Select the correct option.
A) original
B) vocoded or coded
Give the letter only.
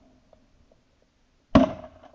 A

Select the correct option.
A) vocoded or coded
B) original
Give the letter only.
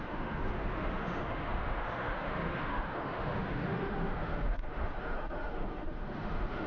A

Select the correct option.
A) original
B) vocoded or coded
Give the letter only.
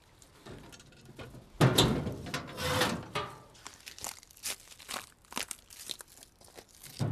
A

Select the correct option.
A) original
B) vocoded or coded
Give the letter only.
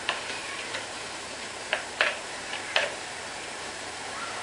B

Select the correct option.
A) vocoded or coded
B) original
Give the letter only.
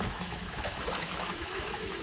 A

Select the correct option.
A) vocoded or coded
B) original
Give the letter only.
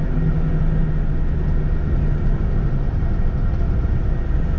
B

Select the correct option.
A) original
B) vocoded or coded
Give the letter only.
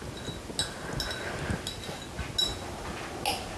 A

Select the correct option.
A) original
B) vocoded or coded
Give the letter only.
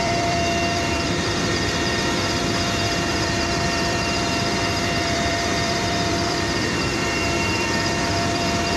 B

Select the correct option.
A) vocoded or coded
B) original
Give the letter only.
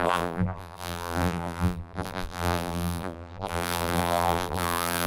A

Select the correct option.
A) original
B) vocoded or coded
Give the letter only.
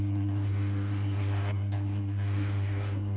B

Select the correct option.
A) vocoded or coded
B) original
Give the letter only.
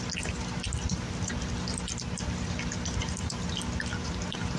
B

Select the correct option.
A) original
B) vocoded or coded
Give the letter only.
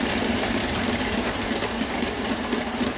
A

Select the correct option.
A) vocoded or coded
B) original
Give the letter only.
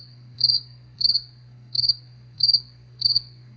A